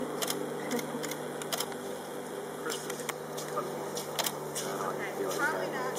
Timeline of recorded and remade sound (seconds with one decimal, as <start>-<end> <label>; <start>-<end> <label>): 0.0-6.0 recorded